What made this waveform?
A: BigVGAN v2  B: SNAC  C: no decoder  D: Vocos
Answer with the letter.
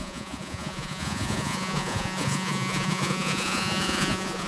D